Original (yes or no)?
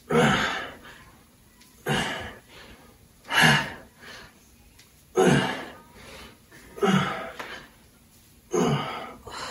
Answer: no